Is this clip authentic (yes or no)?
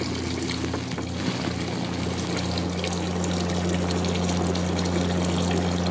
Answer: yes